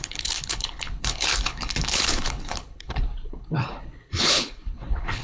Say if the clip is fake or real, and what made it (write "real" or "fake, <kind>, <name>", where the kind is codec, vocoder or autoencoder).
fake, codec, HILCodec